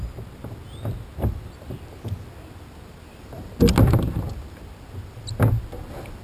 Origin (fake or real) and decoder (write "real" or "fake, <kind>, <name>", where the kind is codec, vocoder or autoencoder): real